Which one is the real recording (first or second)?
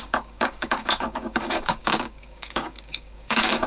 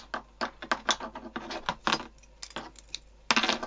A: second